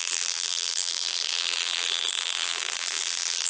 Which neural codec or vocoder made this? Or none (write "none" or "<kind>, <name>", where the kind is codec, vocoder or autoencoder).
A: vocoder, BigVGAN v2